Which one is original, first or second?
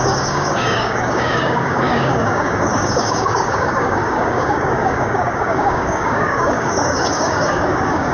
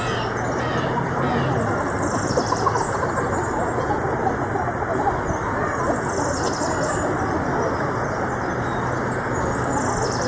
second